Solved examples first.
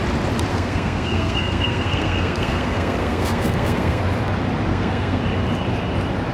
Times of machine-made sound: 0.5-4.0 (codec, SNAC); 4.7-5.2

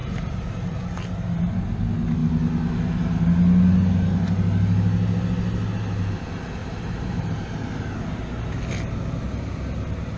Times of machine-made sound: 0.0-0.8 (vocoder, BigVGAN v2); 6.6-7.9

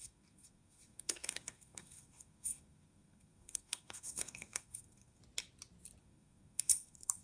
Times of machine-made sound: 0.0-5.2 (codec, SNAC); 6.0-7.2